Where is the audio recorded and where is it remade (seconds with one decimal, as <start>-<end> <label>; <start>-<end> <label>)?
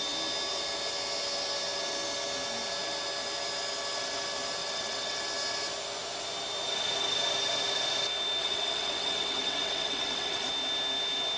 0.0-4.6 recorded; 4.6-5.2 remade; 5.2-8.4 recorded; 8.4-10.5 remade; 10.5-11.4 recorded